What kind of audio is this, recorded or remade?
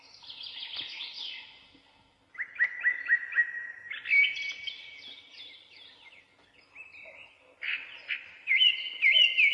recorded